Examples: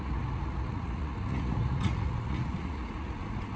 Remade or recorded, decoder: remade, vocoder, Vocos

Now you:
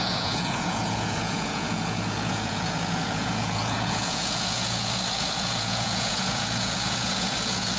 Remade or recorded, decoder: remade, vocoder, Vocos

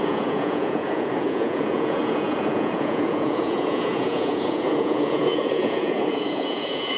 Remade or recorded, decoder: remade, vocoder, Vocos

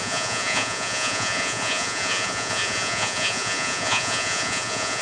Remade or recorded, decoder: remade, vocoder, Vocos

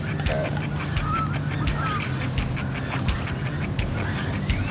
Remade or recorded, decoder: recorded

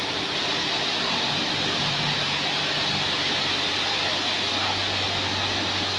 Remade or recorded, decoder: recorded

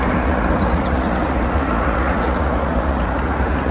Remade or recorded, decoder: remade, vocoder, Vocos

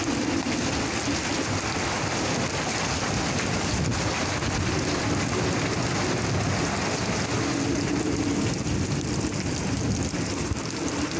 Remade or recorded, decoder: recorded